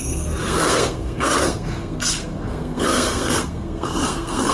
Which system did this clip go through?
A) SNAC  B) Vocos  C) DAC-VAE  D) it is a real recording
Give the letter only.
A